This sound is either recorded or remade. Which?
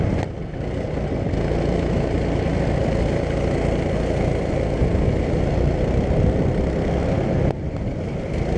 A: recorded